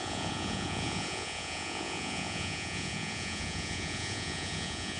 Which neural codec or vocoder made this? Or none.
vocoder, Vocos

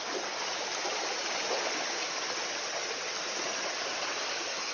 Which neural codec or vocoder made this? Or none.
none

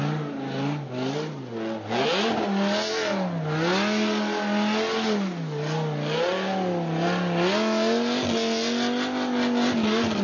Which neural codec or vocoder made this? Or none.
none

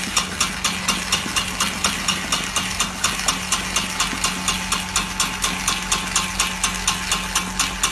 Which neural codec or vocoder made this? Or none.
none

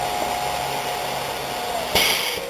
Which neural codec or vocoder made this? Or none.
none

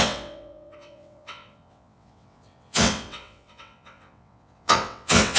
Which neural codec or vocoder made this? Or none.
vocoder, WaveNeXt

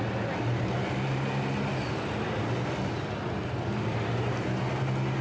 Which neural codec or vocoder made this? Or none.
none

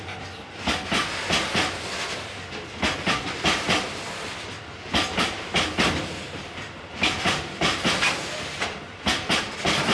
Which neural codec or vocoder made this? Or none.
none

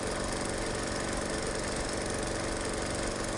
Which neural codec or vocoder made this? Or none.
none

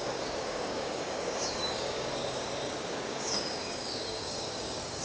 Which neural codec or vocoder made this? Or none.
codec, DAC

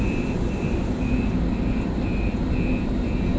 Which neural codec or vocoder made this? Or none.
vocoder, BigVGAN v2